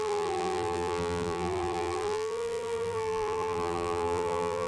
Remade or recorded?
remade